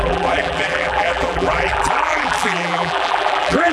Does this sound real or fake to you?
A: fake